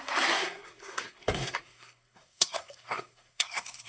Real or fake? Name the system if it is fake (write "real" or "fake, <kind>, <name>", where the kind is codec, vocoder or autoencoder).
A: fake, codec, SNAC